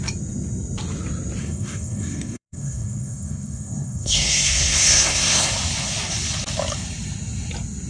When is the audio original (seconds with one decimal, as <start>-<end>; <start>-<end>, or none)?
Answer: 0.0-1.4; 5.5-7.9